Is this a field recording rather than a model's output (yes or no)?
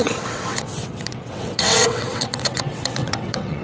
no